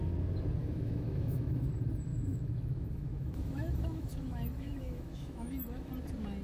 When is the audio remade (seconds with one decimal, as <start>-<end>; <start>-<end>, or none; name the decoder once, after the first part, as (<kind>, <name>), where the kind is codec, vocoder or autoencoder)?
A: 0.6-1.7 (autoencoder, DAC-VAE); 2.1-5.9

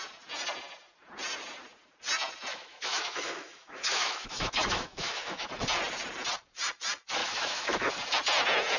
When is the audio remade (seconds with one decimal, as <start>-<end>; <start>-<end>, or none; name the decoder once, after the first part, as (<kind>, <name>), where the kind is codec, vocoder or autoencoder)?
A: 2.5-5.5 (autoencoder, DAC-VAE); 7.2-7.9

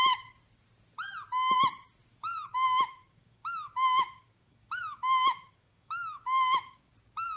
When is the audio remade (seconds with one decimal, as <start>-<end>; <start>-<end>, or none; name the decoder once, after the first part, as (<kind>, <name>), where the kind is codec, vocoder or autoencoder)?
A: 2.5-6.9 (autoencoder, DAC-VAE)

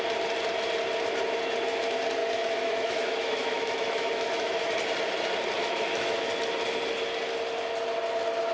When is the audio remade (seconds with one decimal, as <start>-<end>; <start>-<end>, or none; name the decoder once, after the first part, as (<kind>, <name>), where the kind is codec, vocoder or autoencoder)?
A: 2.2-4.7 (autoencoder, DAC-VAE); 5.6-6.3

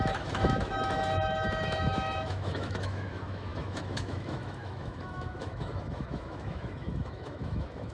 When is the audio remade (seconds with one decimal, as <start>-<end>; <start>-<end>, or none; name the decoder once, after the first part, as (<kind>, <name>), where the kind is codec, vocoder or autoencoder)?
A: 0.0-7.9 (autoencoder, DAC-VAE)

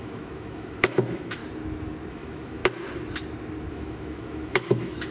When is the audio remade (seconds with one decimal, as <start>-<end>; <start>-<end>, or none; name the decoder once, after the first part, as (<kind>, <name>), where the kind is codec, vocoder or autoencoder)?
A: 0.0-1.4 (autoencoder, DAC-VAE); 2.1-2.6; 3.7-5.1

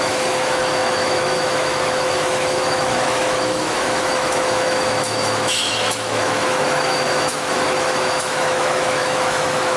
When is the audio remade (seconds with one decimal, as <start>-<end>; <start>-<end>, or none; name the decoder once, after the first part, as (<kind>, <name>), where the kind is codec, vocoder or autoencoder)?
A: 0.0-9.8 (autoencoder, DAC-VAE)